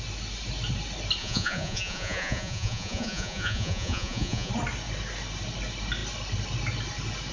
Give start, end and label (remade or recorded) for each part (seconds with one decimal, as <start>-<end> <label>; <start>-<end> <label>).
0.0-1.2 recorded; 1.2-4.5 remade; 4.5-7.3 recorded